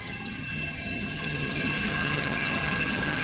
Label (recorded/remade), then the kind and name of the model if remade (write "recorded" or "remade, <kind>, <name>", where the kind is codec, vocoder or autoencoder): remade, vocoder, HiFi-GAN